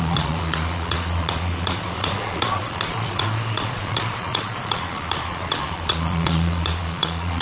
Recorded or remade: remade